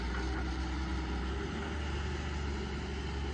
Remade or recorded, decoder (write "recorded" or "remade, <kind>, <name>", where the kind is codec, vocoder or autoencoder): recorded